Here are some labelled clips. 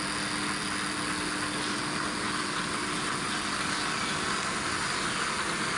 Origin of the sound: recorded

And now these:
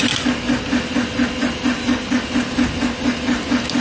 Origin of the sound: recorded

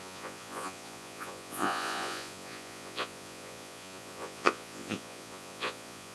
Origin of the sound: remade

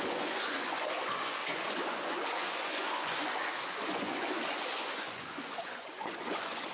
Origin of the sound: remade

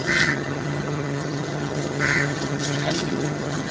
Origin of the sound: remade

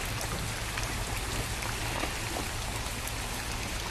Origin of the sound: recorded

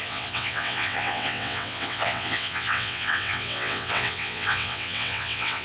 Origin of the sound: remade